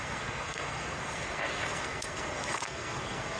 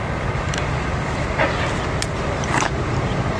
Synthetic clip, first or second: first